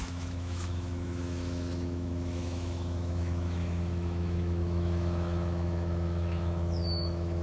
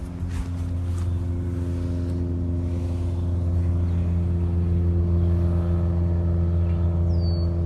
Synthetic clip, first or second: first